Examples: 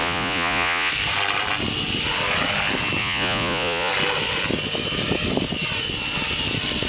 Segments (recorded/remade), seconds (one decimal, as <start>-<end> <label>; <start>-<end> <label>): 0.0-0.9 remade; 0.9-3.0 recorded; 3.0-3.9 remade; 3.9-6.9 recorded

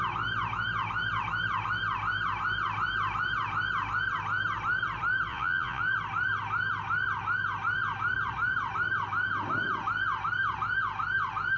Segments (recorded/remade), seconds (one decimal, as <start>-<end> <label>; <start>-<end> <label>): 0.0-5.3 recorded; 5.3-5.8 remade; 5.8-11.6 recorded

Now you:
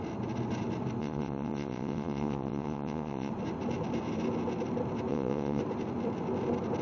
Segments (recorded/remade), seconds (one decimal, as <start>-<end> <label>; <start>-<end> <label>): 0.0-1.0 recorded; 1.0-3.3 remade; 3.3-5.1 recorded; 5.1-5.6 remade; 5.6-6.8 recorded

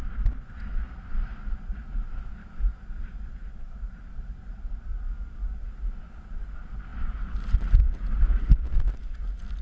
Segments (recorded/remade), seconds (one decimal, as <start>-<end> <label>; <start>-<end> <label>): 0.0-9.6 recorded